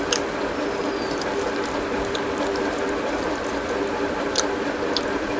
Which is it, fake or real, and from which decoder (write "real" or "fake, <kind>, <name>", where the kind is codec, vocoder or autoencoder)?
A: real